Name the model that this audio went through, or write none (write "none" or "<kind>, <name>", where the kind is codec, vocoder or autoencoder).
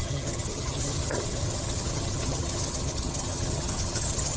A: vocoder, HiFi-GAN